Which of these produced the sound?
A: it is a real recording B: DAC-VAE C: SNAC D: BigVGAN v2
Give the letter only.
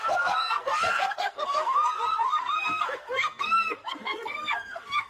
C